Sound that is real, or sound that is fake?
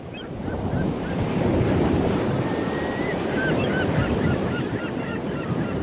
fake